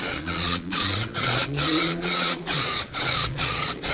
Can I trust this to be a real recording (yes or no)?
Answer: no